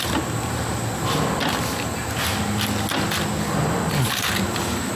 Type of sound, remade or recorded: recorded